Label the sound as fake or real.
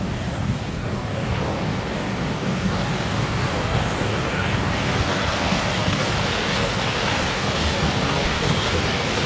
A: fake